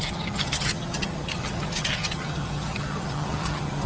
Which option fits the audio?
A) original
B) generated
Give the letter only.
B